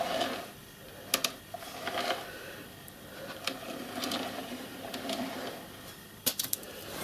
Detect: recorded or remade recorded